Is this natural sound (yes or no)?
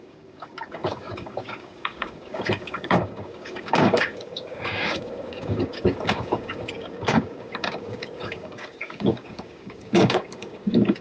no